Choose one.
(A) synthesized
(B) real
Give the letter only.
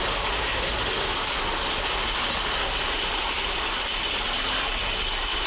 B